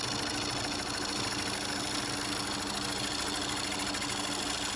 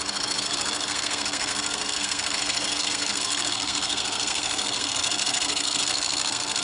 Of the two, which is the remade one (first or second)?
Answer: second